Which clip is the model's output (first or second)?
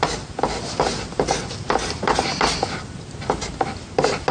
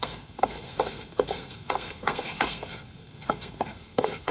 second